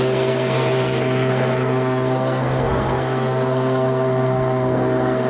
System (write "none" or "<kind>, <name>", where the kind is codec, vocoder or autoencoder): codec, SNAC